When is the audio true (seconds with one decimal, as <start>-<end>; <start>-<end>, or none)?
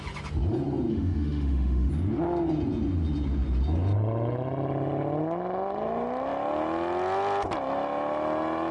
0.0-0.9; 1.9-8.7